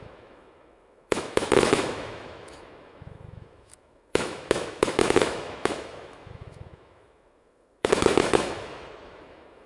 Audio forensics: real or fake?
fake